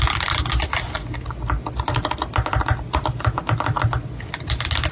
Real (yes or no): yes